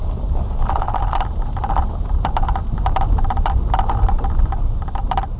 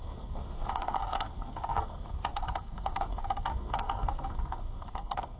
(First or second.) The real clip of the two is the first